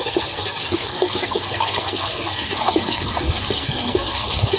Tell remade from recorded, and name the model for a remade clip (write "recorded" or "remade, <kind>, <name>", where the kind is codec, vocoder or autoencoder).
remade, codec, SNAC